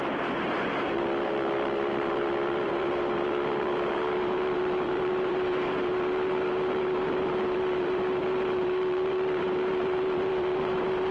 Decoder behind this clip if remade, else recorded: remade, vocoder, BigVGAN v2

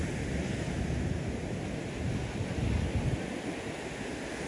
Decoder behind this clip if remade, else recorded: recorded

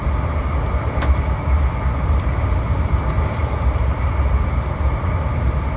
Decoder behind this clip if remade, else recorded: recorded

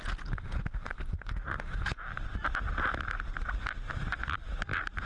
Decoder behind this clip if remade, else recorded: recorded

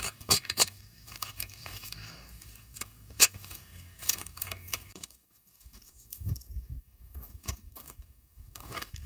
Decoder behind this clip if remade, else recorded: remade, codec, DAC